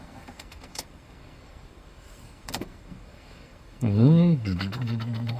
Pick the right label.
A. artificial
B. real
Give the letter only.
A